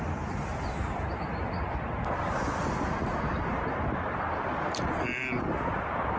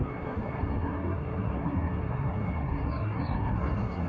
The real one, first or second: first